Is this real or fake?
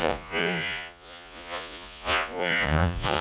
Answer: fake